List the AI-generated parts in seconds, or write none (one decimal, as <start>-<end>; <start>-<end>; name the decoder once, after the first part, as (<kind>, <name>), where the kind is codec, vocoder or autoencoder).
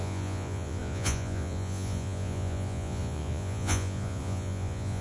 0.0-5.0 (vocoder, Vocos)